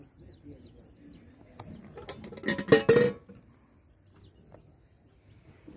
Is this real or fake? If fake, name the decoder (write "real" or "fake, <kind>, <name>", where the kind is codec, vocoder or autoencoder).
real